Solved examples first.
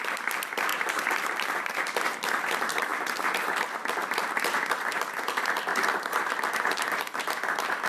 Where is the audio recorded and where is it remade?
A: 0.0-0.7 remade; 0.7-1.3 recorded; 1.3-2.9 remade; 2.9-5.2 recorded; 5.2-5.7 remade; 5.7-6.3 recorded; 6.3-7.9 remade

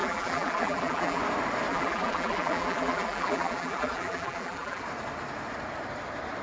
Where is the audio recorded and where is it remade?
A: 0.0-1.2 remade; 1.2-1.7 recorded; 1.7-4.8 remade; 4.8-6.4 recorded

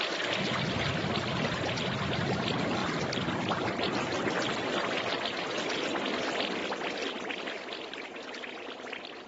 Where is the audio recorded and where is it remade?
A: 0.0-9.3 recorded

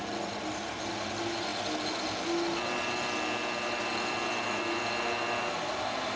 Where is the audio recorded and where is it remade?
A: 0.0-6.2 recorded